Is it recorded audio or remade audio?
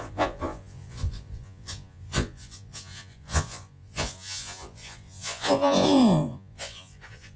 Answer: remade